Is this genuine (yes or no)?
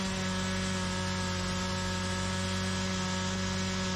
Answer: yes